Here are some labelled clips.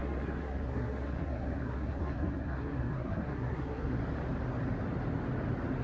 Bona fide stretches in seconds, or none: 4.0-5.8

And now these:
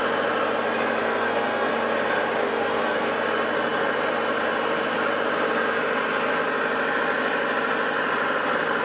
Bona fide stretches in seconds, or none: 0.0-1.0; 1.7-2.4; 3.1-8.8

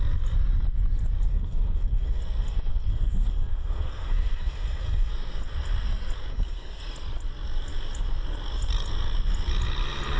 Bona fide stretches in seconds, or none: 0.0-1.3; 2.2-2.7; 5.1-6.3; 6.8-10.2

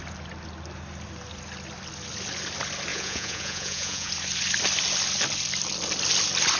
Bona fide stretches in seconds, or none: 0.0-2.9; 4.1-6.6

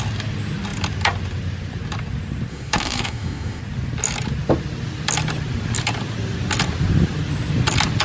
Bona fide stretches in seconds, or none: 0.0-2.5; 3.6-8.0